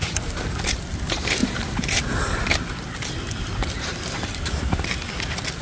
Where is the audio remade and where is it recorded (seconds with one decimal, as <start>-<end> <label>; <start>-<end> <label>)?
0.0-1.4 recorded; 1.4-2.6 remade; 2.6-3.9 recorded; 3.9-4.6 remade; 4.6-5.6 recorded